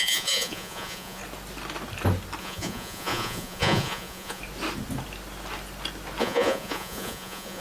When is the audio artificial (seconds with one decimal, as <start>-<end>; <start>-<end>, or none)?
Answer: 0.0-1.2; 2.4-4.4; 6.2-7.6